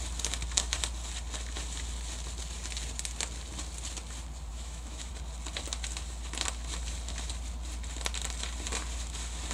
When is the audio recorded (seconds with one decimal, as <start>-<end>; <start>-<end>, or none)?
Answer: 0.0-4.5; 5.1-9.5